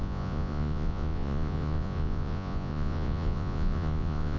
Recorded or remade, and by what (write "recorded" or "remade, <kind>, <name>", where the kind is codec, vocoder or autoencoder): remade, vocoder, Vocos